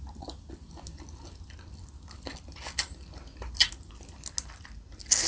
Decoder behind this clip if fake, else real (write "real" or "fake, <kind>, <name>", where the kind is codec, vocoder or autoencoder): real